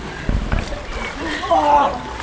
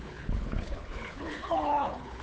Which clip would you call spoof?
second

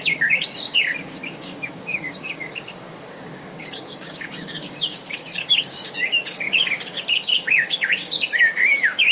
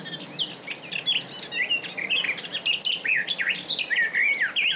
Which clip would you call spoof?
first